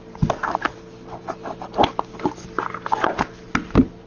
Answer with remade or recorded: recorded